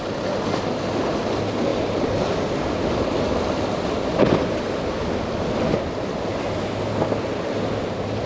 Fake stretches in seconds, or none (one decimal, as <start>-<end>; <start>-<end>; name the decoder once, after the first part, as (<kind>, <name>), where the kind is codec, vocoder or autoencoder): none